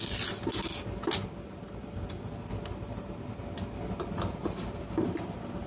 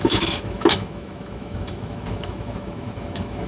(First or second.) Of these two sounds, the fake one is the second